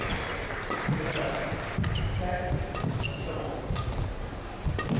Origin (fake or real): real